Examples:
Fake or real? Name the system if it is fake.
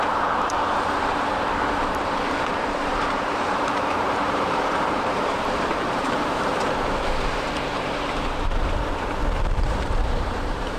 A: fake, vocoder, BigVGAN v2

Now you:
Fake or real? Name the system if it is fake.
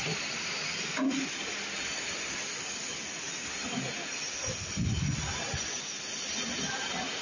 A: real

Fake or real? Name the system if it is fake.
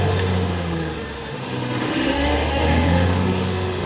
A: fake, autoencoder, DAC-VAE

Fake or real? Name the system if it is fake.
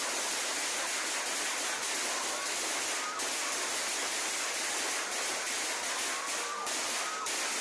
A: real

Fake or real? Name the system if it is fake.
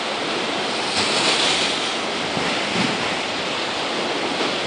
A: real